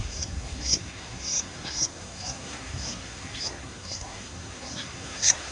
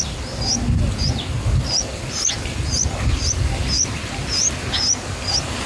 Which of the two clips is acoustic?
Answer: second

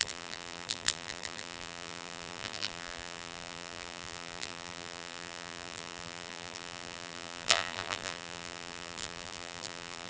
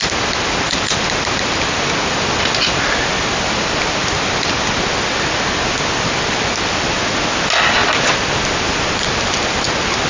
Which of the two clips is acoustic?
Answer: second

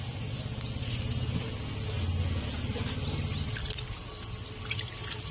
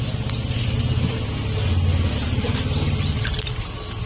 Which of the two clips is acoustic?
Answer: first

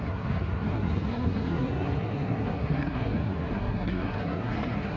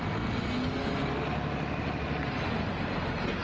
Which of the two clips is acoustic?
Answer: second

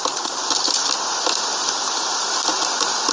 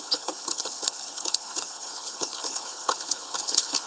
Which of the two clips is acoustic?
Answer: first